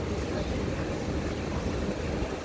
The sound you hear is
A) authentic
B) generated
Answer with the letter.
A